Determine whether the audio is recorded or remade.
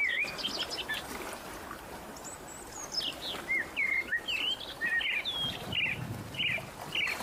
recorded